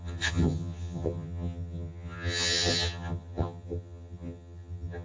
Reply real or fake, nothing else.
fake